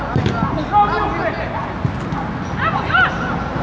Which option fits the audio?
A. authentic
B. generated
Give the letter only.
A